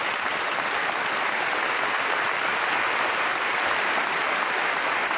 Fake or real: real